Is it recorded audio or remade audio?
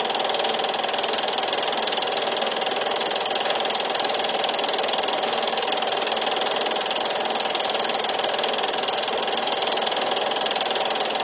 recorded